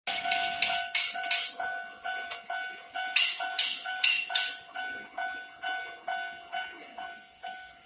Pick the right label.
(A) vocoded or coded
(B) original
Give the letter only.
B